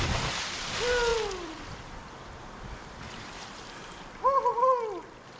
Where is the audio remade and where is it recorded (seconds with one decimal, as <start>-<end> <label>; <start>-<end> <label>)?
0.0-1.1 recorded; 1.1-4.1 remade; 4.1-5.4 recorded